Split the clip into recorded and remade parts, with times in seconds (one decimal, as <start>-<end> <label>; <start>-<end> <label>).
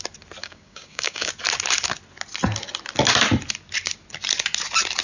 0.0-0.4 recorded; 0.4-1.3 remade; 1.3-5.0 recorded